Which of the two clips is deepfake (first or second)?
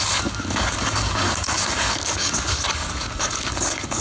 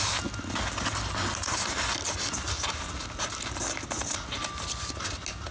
first